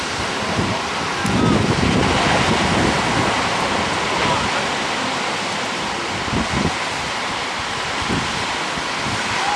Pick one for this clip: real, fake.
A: real